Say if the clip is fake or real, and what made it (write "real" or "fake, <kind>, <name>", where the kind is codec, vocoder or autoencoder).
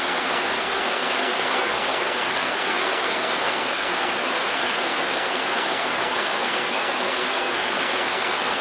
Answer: fake, codec, SNAC